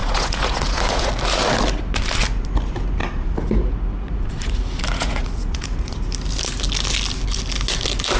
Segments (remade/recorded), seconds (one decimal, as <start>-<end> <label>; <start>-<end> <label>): 0.0-1.1 remade; 1.1-3.0 recorded; 3.0-6.1 remade; 6.1-8.2 recorded